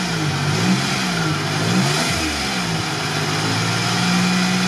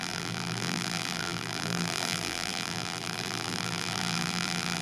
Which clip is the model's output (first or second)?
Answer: second